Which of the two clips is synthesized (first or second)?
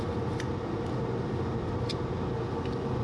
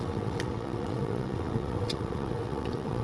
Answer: second